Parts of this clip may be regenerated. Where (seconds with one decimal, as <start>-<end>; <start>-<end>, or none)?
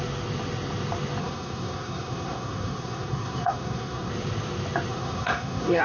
1.2-4.1; 4.9-5.8